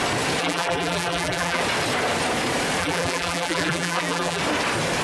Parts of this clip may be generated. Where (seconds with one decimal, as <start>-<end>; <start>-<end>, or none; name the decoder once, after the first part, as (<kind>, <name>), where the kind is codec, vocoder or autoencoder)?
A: 0.4-1.6 (vocoder, BigVGAN v2); 2.8-4.4